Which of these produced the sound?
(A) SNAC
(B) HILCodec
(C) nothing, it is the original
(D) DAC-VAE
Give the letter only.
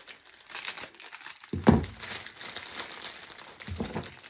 C